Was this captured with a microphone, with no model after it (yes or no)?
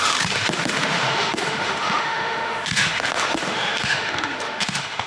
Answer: no